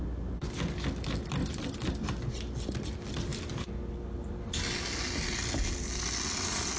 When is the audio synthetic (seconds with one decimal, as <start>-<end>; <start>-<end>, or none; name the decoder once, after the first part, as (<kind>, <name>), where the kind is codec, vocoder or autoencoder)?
none